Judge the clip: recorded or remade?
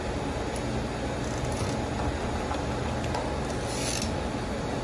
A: recorded